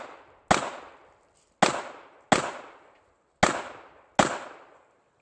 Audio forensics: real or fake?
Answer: real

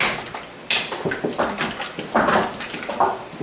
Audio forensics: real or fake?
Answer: real